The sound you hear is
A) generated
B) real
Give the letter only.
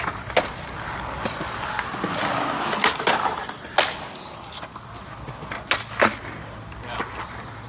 B